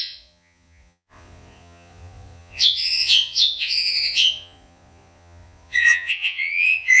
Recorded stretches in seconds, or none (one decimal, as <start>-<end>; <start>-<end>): none